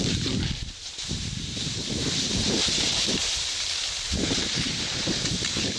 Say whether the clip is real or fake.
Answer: fake